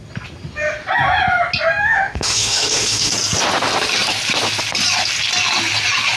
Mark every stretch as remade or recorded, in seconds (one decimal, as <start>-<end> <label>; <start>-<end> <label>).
0.0-1.8 recorded; 1.8-3.1 remade; 3.1-6.2 recorded

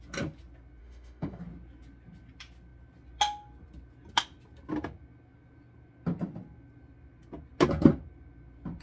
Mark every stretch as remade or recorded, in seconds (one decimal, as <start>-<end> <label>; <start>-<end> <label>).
0.0-0.8 recorded; 0.8-1.4 remade; 1.4-8.8 recorded

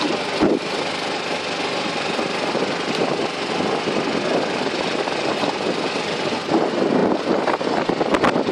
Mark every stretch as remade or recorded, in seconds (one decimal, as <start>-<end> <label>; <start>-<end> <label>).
0.0-8.5 recorded

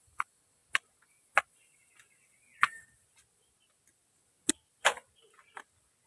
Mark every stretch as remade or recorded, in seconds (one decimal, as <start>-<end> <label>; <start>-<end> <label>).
0.0-6.1 recorded

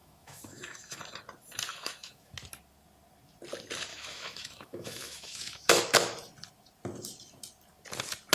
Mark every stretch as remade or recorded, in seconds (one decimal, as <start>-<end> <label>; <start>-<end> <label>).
0.0-1.0 remade; 1.0-1.7 recorded; 1.7-2.3 remade; 2.3-3.9 recorded; 3.9-5.8 remade; 5.8-8.3 recorded